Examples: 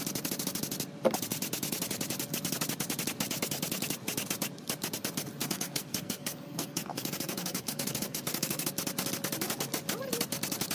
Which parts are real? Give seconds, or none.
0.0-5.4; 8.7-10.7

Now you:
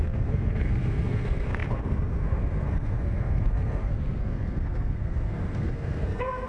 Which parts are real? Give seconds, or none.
none

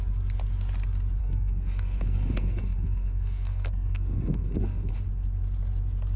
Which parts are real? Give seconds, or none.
0.0-1.2; 4.9-6.2

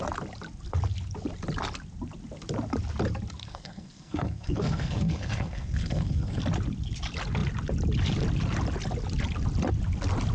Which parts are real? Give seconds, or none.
0.0-3.4; 6.4-10.3

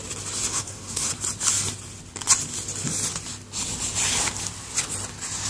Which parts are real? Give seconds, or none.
0.0-0.5; 1.1-5.5